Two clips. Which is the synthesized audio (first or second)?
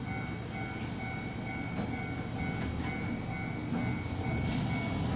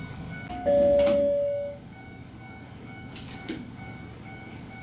second